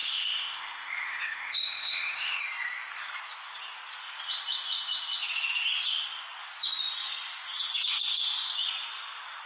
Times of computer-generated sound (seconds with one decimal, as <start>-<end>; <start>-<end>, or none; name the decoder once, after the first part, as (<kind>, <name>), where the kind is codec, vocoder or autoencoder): 0.0-2.4 (codec, ZipCodec)